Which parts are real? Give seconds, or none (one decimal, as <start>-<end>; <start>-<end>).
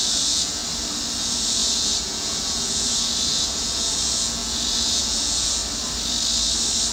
0.6-1.2; 5.6-6.9